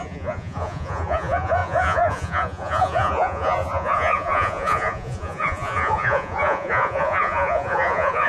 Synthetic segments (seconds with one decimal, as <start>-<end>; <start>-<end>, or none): 0.0-8.3